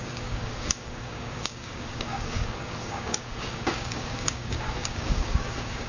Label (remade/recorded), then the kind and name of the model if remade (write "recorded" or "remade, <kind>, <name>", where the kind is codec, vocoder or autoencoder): remade, codec, DAC